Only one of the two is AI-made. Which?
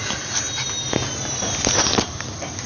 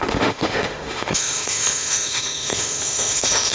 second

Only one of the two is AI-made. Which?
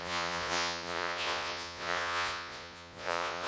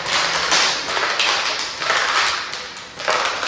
first